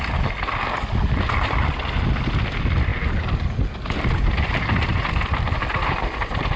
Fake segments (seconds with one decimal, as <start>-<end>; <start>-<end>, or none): none